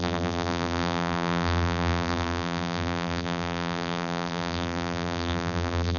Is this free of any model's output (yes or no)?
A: no